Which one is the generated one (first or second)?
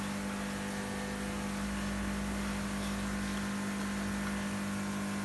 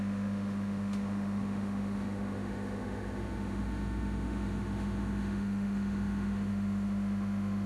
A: second